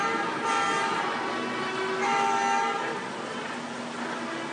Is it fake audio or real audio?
real